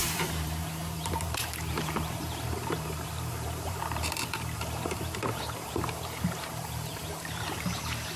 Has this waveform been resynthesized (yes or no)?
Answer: yes